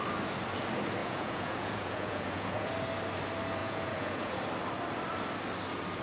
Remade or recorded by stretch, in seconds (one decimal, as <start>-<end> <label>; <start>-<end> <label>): 0.0-1.0 recorded; 1.0-2.7 remade; 2.7-3.6 recorded; 3.6-4.4 remade; 4.4-6.0 recorded

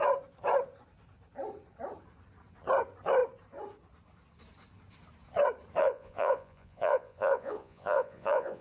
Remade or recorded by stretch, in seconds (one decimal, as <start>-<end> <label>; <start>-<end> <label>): 0.0-5.8 recorded; 5.8-8.6 remade

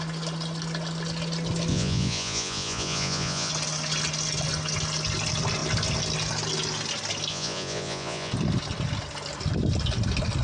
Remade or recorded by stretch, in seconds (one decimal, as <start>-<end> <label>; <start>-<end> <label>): 0.0-1.7 recorded; 1.7-3.5 remade; 3.5-7.3 recorded; 7.3-8.3 remade; 8.3-10.4 recorded

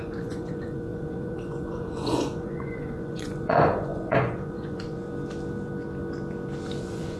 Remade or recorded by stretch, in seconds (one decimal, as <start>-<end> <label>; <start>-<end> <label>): 0.0-5.0 remade; 5.0-6.8 recorded; 6.8-7.2 remade

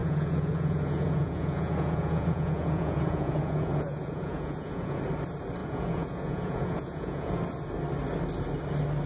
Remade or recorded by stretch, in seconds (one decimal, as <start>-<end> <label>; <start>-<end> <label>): 0.0-5.0 remade; 5.0-5.6 recorded; 5.6-7.4 remade; 7.4-9.1 recorded

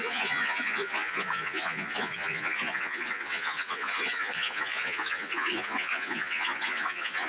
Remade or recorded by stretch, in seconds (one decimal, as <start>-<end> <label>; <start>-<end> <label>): 0.0-7.3 remade